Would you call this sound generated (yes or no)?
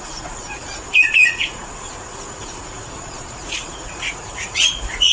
yes